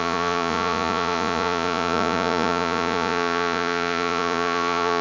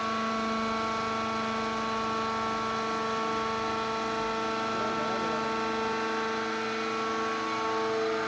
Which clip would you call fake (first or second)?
first